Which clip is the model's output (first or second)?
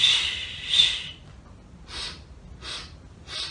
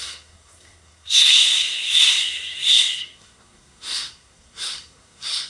second